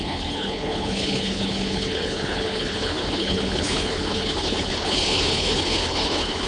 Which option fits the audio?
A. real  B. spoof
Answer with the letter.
B